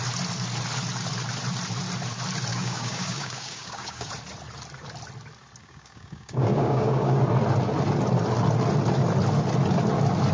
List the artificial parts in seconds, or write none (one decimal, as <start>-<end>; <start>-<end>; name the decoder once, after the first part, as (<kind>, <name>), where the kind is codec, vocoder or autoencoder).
2.5-4.1 (codec, DAC); 5.6-7.2